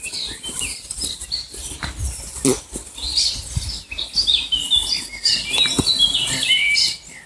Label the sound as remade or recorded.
recorded